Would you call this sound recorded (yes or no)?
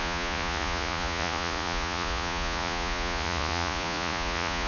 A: no